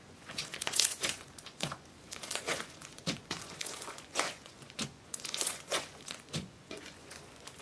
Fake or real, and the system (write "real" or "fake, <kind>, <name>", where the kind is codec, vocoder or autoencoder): fake, vocoder, Vocos